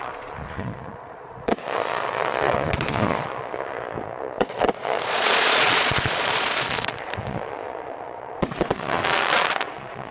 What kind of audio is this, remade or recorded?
remade